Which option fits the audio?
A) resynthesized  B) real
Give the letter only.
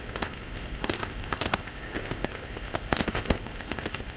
A